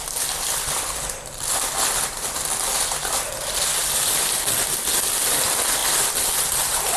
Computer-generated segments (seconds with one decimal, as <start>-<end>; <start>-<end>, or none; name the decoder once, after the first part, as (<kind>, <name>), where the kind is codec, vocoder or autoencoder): none